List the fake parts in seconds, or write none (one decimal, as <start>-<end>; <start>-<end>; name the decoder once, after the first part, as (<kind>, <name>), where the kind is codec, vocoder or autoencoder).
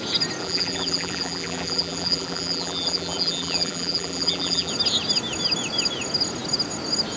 0.4-4.7 (vocoder, BigVGAN v2)